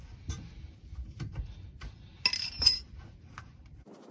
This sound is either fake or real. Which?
real